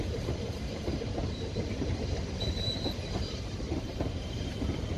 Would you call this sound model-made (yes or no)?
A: yes